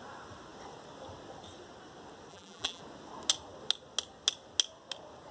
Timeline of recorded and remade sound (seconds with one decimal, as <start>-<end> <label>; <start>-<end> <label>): 0.0-2.3 recorded; 2.3-2.8 remade; 2.8-5.3 recorded